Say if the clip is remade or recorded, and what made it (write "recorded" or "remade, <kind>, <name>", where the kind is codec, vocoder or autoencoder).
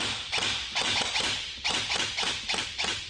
recorded